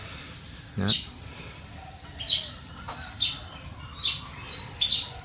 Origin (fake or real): real